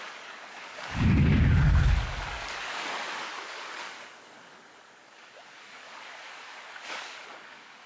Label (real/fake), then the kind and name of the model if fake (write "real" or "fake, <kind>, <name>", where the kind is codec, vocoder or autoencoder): fake, codec, DAC